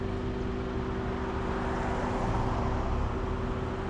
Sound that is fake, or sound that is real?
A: real